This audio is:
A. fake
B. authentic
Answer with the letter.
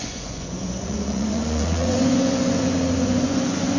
A